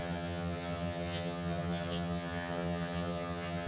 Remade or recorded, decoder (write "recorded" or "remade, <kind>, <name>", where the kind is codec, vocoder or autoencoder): remade, vocoder, HiFi-GAN